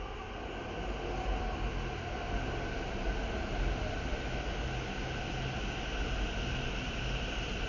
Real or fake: real